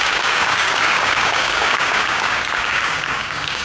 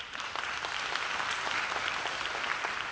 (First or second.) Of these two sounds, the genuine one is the second